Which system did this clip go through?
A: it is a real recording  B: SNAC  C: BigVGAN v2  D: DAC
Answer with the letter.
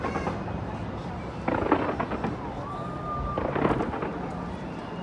A